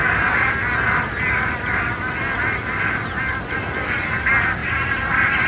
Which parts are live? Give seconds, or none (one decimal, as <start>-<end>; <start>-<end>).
0.0-4.6